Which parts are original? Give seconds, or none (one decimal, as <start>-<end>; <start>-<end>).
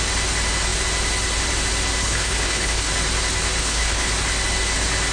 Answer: 0.0-2.0; 2.9-3.6; 4.1-5.1